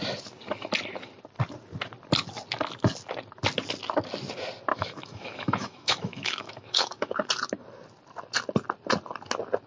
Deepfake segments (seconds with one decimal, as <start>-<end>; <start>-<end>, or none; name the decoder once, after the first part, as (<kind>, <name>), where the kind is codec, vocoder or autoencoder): 4.7-7.3 (autoencoder, DAC-VAE)